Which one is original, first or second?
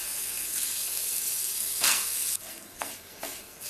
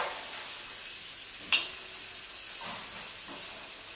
second